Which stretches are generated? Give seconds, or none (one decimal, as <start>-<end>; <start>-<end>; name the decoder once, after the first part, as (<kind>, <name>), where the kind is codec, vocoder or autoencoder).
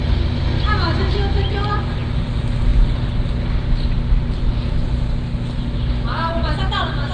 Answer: none